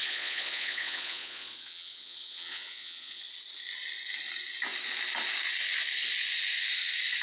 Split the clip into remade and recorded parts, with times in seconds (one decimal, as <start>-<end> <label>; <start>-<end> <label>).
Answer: 0.0-3.2 remade; 3.2-7.2 recorded